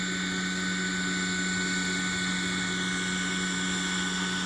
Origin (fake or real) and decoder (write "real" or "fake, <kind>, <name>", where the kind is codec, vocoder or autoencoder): real